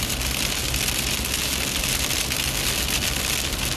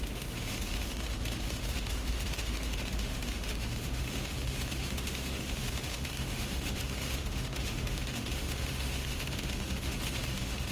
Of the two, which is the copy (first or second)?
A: second